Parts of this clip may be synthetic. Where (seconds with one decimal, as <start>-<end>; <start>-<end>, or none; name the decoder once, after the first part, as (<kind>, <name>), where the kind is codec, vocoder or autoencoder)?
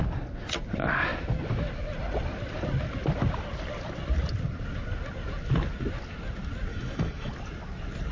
6.7-7.3 (autoencoder, DAC-VAE)